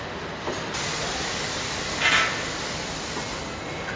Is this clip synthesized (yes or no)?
no